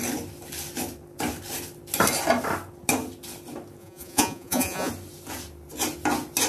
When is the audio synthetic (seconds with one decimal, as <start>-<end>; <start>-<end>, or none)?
3.8-4.9